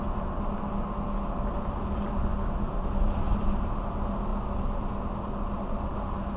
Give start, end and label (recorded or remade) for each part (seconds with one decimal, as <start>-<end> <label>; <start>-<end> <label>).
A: 0.0-6.4 recorded